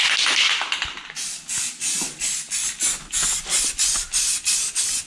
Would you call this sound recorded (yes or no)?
yes